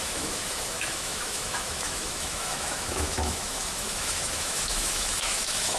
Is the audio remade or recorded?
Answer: remade